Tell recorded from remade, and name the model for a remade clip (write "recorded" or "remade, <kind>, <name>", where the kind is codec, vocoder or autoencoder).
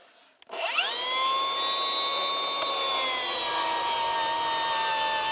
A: recorded